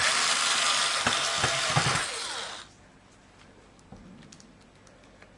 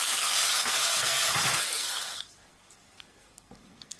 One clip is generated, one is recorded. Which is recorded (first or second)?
first